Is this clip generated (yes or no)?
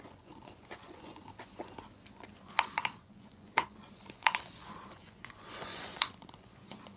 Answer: yes